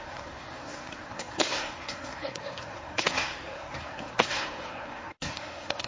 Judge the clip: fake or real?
fake